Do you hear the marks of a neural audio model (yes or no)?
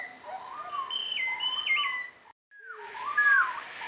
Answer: no